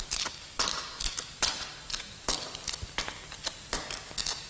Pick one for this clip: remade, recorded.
recorded